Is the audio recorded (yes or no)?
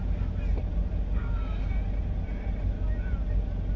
yes